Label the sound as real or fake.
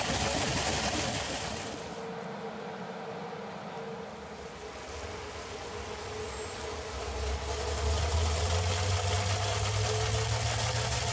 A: real